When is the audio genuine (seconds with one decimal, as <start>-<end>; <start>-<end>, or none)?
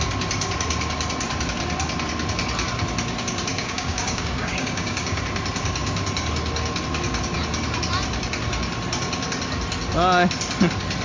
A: 0.0-3.5; 5.2-11.0